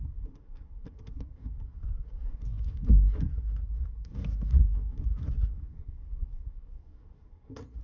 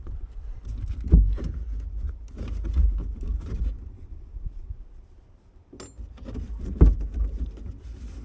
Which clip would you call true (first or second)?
second